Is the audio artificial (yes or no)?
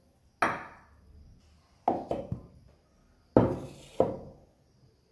no